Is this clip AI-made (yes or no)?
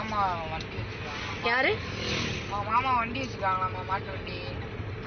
no